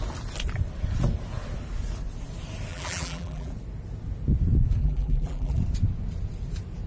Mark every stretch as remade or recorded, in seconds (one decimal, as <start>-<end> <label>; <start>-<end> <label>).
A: 0.0-2.7 recorded; 2.7-3.5 remade; 3.5-4.8 recorded; 4.8-5.6 remade; 5.6-6.9 recorded